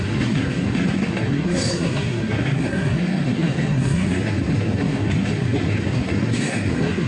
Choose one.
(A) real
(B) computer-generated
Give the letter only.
B